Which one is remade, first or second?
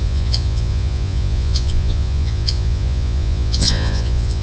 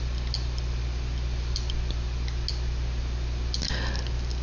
first